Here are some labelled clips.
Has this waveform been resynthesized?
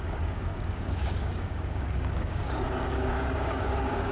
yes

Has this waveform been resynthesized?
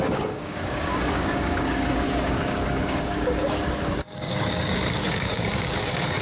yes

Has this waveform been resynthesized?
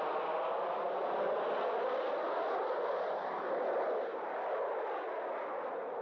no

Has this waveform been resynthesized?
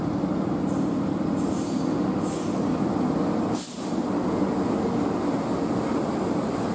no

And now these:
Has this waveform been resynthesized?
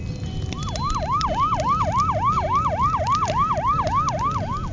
no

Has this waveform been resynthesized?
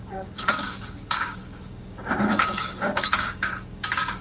yes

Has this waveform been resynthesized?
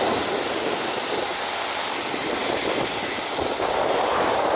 no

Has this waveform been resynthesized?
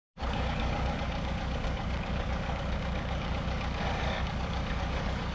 yes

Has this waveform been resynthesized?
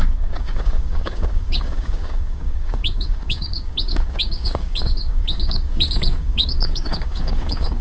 yes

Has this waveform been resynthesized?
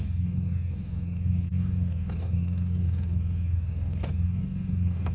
yes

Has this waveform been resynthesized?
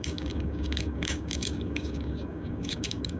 yes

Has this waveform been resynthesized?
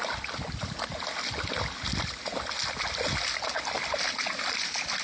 no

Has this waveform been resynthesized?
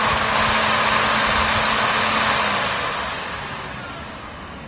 no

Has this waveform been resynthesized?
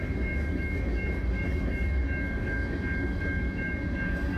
yes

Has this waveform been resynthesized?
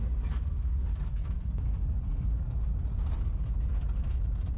no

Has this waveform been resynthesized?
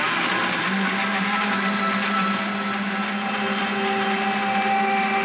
no